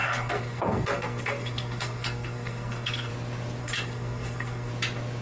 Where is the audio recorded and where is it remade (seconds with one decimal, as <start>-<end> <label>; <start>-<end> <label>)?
0.0-3.1 remade; 3.1-3.6 recorded; 3.6-4.7 remade; 4.7-5.2 recorded